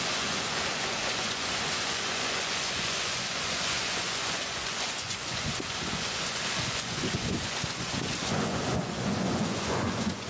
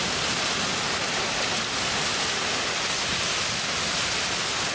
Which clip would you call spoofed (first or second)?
first